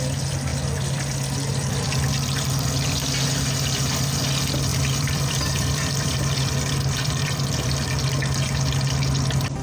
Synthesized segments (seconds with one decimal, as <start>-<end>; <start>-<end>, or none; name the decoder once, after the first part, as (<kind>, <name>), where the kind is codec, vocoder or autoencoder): 4.7-7.9 (vocoder, BigVGAN v2)